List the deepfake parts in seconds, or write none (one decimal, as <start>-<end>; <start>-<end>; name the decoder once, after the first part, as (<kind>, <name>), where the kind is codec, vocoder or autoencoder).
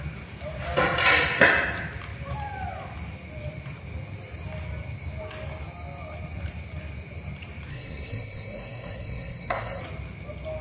7.7-9.8 (codec, SNAC)